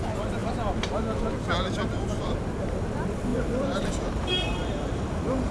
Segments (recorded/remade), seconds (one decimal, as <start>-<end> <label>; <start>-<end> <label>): 0.0-0.4 remade; 0.4-2.1 recorded; 2.1-5.5 remade